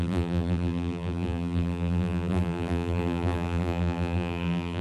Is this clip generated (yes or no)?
yes